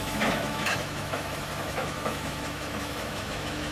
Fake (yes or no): yes